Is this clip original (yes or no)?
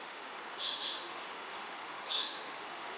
no